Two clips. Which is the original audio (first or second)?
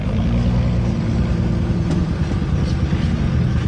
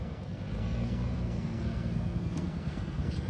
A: first